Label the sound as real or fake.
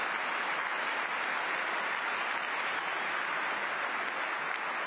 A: real